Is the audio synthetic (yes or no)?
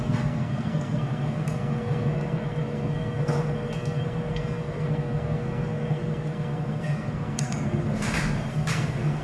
yes